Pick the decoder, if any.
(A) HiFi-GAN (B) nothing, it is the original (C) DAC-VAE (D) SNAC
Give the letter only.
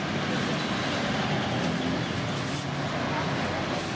B